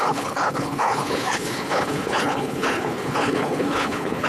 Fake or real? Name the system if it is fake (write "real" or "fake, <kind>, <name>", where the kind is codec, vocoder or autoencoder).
fake, codec, HILCodec